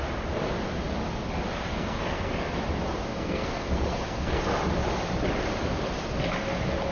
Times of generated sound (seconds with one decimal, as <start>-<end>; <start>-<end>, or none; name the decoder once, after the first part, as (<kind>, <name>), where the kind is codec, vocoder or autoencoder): 1.7-2.6 (codec, SNAC); 3.1-4.4